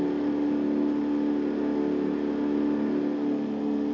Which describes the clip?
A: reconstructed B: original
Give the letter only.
B